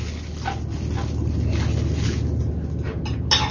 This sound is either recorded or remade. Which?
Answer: recorded